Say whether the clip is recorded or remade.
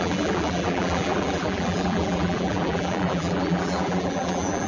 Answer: remade